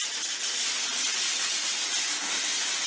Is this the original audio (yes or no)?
yes